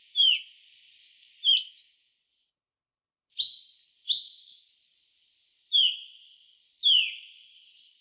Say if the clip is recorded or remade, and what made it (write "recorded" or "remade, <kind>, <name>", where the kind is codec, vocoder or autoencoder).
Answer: recorded